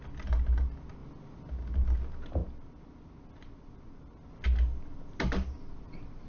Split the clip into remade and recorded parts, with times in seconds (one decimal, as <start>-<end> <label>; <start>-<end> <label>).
0.0-6.3 recorded